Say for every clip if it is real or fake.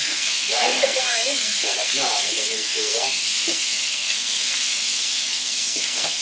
fake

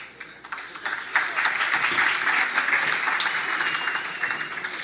real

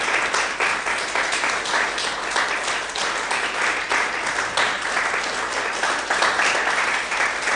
real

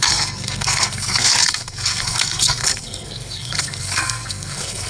fake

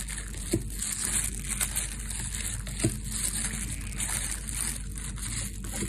real